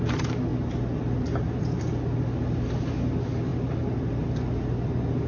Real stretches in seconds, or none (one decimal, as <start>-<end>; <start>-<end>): 0.0-5.3